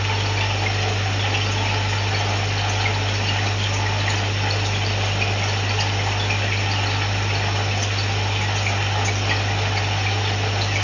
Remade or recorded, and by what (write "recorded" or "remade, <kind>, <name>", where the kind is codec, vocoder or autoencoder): recorded